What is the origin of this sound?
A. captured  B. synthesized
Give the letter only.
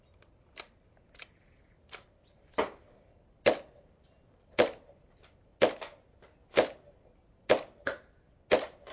A